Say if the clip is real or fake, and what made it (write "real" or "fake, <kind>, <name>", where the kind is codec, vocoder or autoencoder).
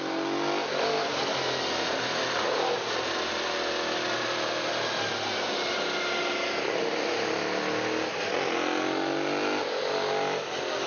real